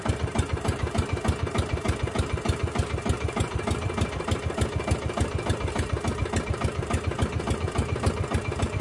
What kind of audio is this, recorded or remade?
recorded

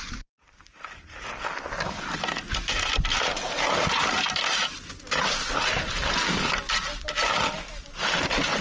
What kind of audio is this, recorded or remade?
recorded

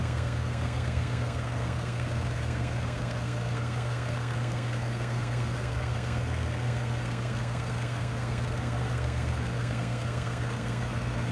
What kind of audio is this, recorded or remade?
remade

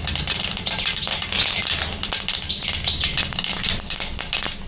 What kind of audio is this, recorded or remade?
recorded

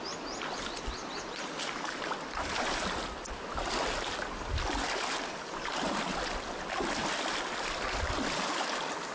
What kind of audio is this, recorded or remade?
recorded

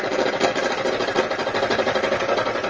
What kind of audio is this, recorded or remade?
recorded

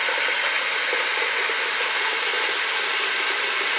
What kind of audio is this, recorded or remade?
recorded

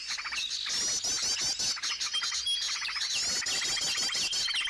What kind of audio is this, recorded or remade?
recorded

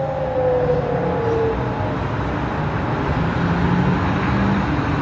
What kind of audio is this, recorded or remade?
recorded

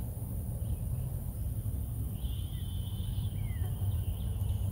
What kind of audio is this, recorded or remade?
recorded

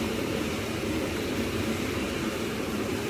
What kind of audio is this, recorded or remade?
remade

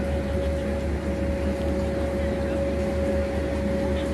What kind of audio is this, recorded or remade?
recorded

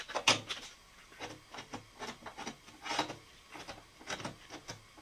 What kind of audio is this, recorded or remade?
recorded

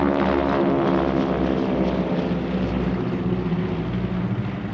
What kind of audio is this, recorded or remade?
recorded